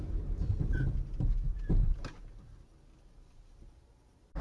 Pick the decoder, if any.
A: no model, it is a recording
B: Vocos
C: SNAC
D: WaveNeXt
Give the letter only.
A